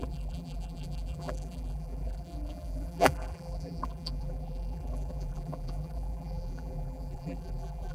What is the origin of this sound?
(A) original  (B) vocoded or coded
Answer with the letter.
B